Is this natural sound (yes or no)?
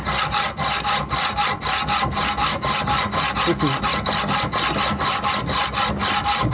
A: yes